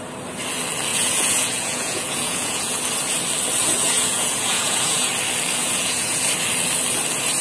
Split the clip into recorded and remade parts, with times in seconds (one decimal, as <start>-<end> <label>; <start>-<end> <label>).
0.0-0.9 recorded; 0.9-2.8 remade; 2.8-3.6 recorded; 3.6-5.1 remade; 5.1-5.6 recorded; 5.6-6.2 remade; 6.2-7.4 recorded